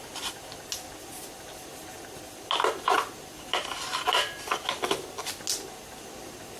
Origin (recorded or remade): recorded